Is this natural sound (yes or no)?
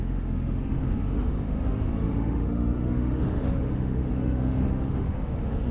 no